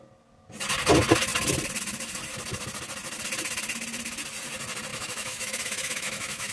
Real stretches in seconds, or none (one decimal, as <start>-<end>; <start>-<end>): 0.0-4.9